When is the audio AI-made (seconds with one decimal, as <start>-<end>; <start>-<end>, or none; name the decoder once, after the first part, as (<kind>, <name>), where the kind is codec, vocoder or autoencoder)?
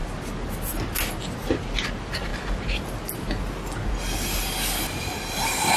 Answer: none